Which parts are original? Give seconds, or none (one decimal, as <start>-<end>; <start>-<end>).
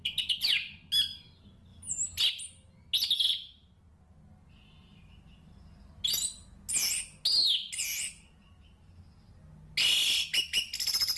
0.0-1.7; 2.2-11.2